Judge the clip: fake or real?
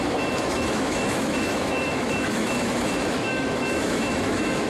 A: fake